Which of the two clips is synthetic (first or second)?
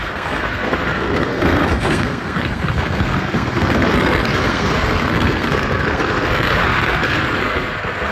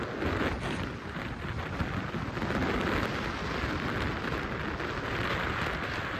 first